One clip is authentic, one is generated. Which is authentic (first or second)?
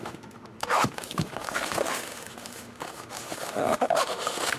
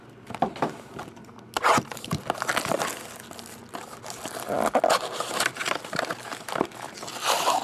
second